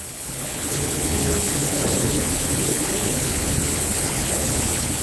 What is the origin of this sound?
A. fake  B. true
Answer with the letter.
A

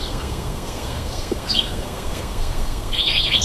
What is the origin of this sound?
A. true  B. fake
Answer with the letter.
B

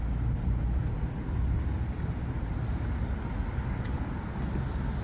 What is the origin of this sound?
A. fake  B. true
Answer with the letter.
B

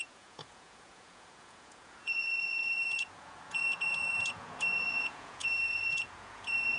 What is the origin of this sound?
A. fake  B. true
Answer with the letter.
A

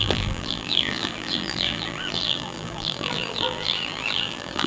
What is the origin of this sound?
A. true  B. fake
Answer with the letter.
B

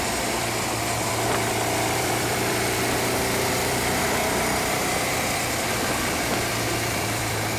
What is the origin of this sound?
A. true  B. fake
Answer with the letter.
B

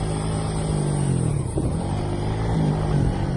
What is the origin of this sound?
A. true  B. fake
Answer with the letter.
A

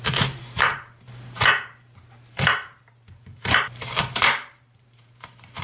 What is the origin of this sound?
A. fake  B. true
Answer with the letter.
A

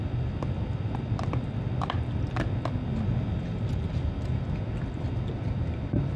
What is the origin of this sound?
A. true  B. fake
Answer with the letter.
B